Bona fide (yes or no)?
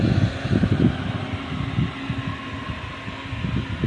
yes